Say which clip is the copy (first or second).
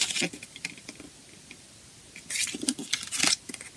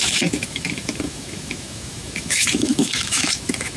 second